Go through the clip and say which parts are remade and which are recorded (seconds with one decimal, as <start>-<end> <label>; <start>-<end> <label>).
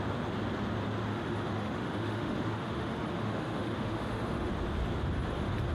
0.0-1.1 recorded; 1.1-4.5 remade; 4.5-5.7 recorded